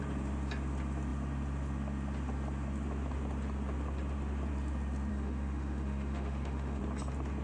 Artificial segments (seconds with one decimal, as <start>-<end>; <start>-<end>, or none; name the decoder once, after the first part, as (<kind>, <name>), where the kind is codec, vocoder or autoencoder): 5.1-6.8 (autoencoder, DAC-VAE)